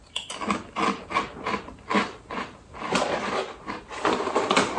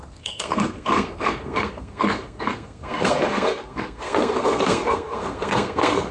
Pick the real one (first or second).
first